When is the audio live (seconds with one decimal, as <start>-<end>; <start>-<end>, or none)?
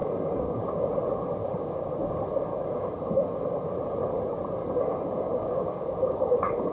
0.9-1.4; 2.1-2.5; 3.7-4.6